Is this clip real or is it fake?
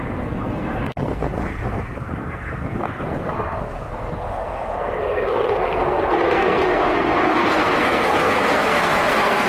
fake